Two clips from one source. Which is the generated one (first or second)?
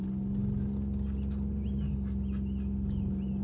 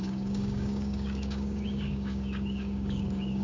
second